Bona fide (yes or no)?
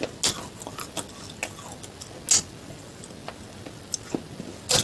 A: yes